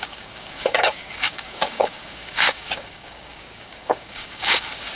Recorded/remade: remade